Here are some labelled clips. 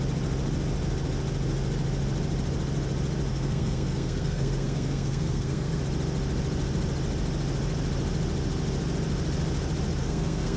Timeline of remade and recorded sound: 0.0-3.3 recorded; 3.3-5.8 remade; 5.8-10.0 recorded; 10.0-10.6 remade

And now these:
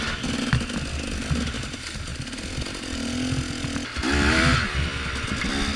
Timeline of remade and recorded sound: 0.0-5.8 recorded

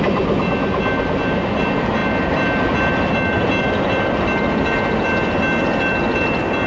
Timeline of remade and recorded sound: 0.0-6.7 recorded

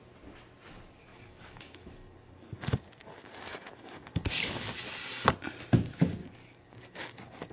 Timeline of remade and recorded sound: 0.0-1.1 recorded; 1.1-4.8 remade; 4.8-6.2 recorded; 6.2-7.5 remade

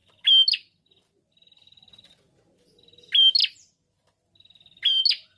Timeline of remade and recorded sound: 0.0-5.4 recorded